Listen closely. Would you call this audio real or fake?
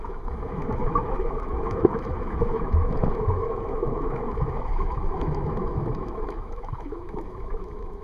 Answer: fake